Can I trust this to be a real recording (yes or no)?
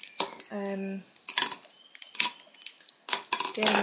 yes